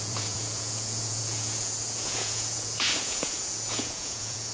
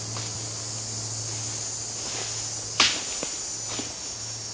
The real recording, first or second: second